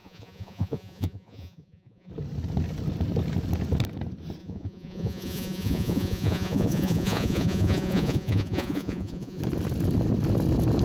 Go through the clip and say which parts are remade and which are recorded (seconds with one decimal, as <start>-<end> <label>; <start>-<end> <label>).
0.0-2.1 remade; 2.1-4.4 recorded; 4.4-9.4 remade; 9.4-10.8 recorded